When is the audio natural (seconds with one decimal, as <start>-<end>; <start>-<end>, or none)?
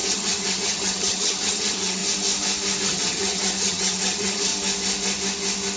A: 2.0-2.8; 4.5-5.8